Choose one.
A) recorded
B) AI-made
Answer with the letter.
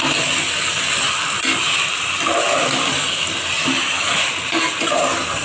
A